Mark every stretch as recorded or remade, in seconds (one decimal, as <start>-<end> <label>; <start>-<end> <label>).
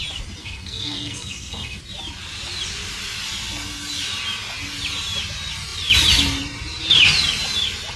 0.0-0.4 recorded; 0.4-1.8 remade; 1.8-8.0 recorded